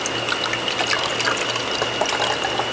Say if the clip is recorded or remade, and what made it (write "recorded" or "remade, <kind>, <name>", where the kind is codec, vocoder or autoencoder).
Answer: recorded